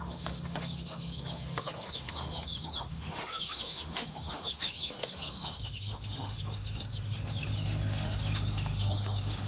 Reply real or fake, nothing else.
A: fake